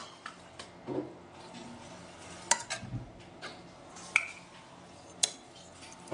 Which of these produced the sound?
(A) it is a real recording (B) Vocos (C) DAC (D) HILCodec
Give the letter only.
A